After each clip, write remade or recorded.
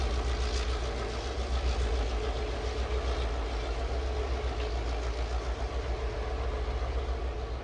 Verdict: recorded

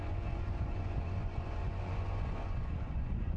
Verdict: remade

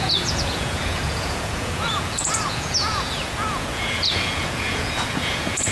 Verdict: remade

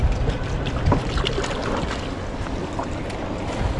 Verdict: recorded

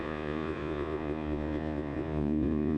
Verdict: remade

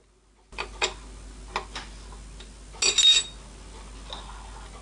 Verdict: recorded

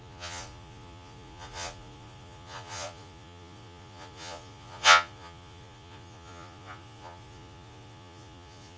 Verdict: remade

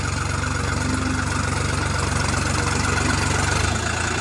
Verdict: recorded